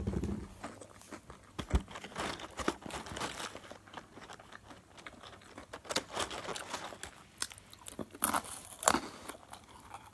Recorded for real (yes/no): yes